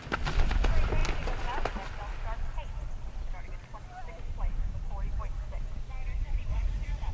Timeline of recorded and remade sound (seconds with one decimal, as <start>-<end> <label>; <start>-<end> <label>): 0.0-6.5 recorded; 6.5-7.1 remade